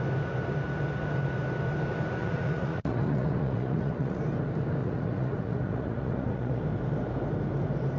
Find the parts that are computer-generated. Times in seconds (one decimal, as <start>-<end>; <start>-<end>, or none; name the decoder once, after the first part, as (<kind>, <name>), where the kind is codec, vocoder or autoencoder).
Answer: 2.2-4.2 (vocoder, Vocos); 4.8-6.6